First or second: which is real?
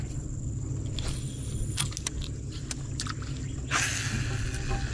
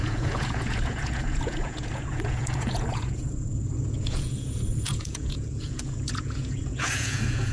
first